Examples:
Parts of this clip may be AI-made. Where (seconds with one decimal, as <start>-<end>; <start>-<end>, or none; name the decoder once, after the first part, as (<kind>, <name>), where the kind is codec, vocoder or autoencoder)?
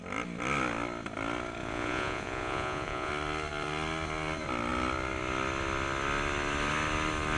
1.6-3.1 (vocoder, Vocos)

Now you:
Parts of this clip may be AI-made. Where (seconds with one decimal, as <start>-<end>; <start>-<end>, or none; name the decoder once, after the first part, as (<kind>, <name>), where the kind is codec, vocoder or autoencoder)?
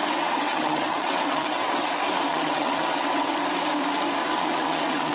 0.0-1.9 (vocoder, WaveNeXt); 2.3-3.3; 4.2-5.1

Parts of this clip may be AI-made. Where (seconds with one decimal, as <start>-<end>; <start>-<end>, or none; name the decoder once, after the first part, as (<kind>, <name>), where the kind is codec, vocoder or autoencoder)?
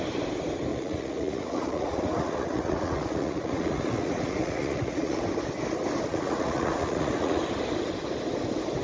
0.7-5.2 (vocoder, Vocos); 6.1-7.4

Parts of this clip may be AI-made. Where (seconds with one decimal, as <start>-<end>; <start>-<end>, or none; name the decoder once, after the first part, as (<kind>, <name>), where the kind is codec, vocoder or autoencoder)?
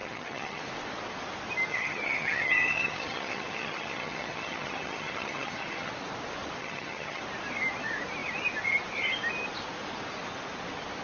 0.0-0.6 (vocoder, HiFi-GAN); 1.7-5.9; 6.6-7.2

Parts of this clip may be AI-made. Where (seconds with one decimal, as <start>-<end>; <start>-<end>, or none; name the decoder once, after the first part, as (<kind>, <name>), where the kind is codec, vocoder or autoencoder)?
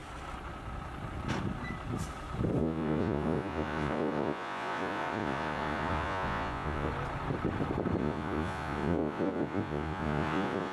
2.6-6.9 (vocoder, Vocos); 8.0-10.7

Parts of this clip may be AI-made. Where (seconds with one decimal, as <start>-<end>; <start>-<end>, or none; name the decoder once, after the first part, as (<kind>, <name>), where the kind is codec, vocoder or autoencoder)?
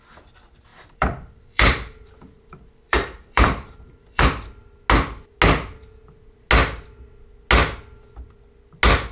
0.7-4.2 (vocoder, BigVGAN v2)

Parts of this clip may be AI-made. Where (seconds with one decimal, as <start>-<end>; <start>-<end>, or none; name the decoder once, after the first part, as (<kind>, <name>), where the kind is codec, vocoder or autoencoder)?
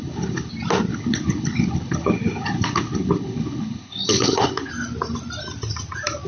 0.0-0.5 (codec, HILCodec); 0.9-4.7